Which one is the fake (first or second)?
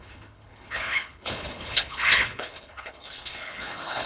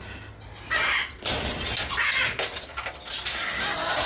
first